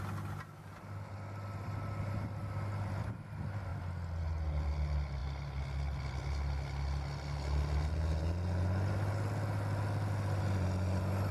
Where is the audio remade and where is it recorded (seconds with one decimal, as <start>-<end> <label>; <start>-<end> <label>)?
0.0-11.3 recorded